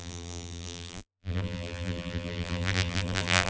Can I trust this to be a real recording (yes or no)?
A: no